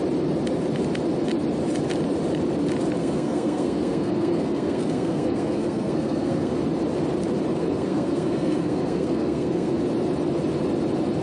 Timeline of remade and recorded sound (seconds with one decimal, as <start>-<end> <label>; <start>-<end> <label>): 0.0-3.0 recorded; 3.0-6.5 remade; 6.5-7.6 recorded; 7.6-9.8 remade; 9.8-11.2 recorded